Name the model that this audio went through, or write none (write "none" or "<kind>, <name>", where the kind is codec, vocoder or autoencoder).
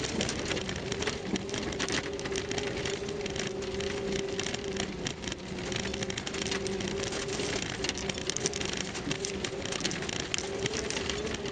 none